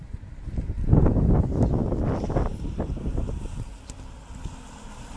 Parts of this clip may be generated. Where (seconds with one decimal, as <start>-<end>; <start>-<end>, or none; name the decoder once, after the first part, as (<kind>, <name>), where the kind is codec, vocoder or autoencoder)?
none

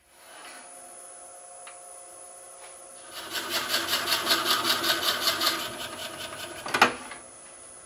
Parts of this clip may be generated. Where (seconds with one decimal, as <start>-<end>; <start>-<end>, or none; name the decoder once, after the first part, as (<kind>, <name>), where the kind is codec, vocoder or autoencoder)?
none

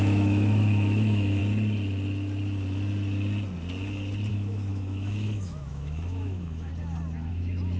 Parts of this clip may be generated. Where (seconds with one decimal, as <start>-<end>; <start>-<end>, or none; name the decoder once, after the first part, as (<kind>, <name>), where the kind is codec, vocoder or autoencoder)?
0.0-1.4 (autoencoder, DAC-VAE); 4.3-6.7; 7.3-7.8

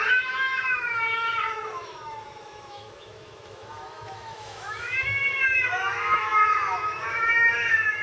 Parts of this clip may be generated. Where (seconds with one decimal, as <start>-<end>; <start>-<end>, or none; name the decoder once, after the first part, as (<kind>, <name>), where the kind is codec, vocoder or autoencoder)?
0.0-8.0 (autoencoder, DAC-VAE)

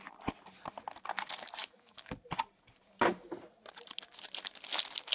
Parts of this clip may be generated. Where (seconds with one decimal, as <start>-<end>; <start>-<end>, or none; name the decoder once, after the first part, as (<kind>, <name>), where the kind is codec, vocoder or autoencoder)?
1.6-2.1 (autoencoder, DAC-VAE)

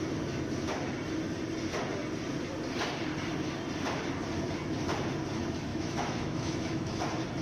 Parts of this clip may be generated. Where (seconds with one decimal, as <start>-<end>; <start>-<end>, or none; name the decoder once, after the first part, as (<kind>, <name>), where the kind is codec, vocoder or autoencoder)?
5.7-7.0 (autoencoder, DAC-VAE)

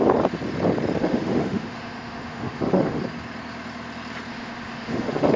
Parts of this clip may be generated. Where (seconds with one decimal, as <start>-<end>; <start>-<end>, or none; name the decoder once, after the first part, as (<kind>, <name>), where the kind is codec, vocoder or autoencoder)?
1.0-3.0 (autoencoder, DAC-VAE); 4.3-5.4